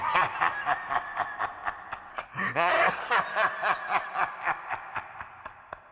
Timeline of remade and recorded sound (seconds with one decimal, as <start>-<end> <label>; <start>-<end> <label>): 0.0-2.1 recorded; 2.1-3.2 remade; 3.2-5.9 recorded